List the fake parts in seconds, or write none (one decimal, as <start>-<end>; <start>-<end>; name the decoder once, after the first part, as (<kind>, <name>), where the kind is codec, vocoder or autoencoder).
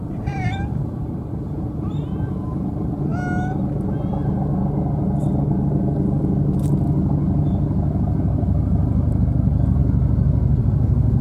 0.0-3.1 (vocoder, BigVGAN v2); 8.3-9.8; 10.6-11.2